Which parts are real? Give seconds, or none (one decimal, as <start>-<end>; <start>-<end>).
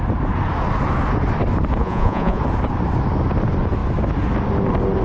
0.0-1.8; 2.4-5.0